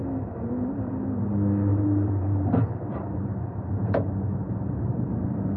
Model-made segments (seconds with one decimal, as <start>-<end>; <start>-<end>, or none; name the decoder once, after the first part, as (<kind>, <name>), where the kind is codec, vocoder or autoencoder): 0.0-0.9 (vocoder, BigVGAN v2); 1.7-5.1